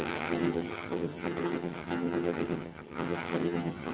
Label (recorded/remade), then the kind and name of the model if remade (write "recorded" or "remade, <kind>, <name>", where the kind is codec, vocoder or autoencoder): remade, vocoder, HiFi-GAN